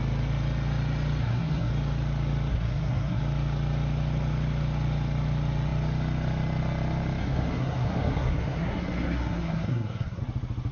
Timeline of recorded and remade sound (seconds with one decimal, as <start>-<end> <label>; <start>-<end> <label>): 0.0-1.2 recorded; 1.2-1.7 remade; 1.7-2.5 recorded; 2.5-3.2 remade; 3.2-7.2 recorded; 7.2-10.2 remade; 10.2-10.7 recorded

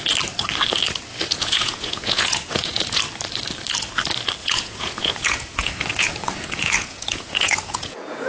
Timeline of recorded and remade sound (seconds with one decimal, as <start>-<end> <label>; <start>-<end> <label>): 0.0-1.1 recorded; 1.1-3.0 remade; 3.0-4.4 recorded; 4.4-8.3 remade

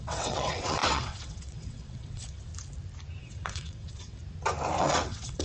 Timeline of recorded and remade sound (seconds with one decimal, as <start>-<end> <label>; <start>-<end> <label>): 0.0-2.5 remade; 2.5-3.2 recorded; 3.2-4.2 remade; 4.2-4.8 recorded; 4.8-5.4 remade

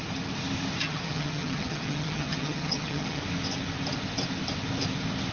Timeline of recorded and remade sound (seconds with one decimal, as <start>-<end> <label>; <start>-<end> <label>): 0.0-0.8 recorded; 0.8-3.2 remade; 3.2-5.3 recorded

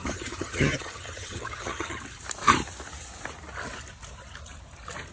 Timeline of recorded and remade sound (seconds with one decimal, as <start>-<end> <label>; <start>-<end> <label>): 0.0-2.0 remade; 2.0-5.1 recorded

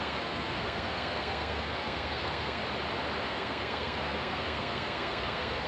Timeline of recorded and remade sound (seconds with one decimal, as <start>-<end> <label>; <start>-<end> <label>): 0.0-2.6 remade; 2.6-3.2 recorded; 3.2-5.7 remade

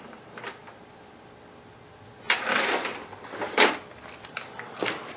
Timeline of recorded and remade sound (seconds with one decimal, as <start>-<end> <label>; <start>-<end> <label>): 0.0-5.2 recorded